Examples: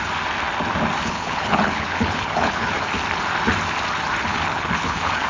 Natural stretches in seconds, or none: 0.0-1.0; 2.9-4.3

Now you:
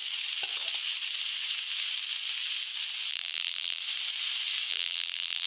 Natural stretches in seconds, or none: 0.0-3.1; 3.8-4.7